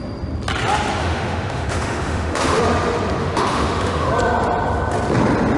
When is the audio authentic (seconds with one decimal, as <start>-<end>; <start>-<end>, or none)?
0.0-1.0; 2.6-3.2; 4.1-5.6